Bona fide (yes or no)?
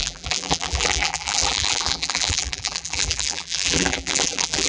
no